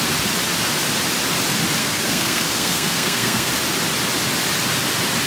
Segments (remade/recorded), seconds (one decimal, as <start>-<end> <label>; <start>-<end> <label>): 0.0-1.8 recorded; 1.8-3.5 remade; 3.5-5.3 recorded